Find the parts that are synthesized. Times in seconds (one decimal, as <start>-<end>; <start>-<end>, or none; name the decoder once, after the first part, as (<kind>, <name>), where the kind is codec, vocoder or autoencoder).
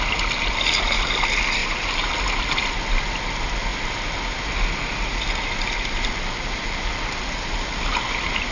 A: 1.6-2.1 (vocoder, BigVGAN v2)